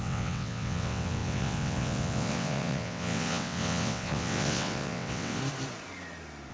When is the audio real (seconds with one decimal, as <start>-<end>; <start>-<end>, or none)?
5.4-6.5